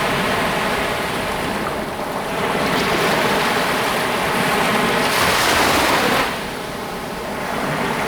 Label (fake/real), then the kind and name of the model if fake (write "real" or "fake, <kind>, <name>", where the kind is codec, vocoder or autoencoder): real